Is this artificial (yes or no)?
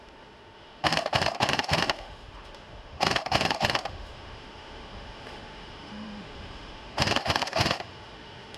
yes